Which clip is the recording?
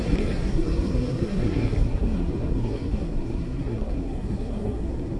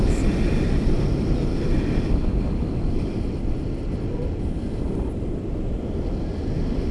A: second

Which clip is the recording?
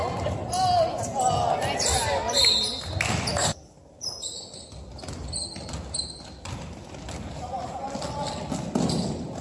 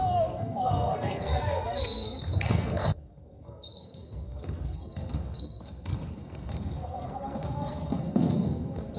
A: first